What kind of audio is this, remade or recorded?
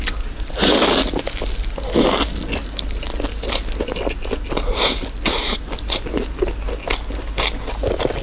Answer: recorded